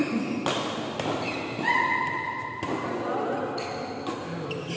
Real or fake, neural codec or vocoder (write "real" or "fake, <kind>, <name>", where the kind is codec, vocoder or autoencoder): real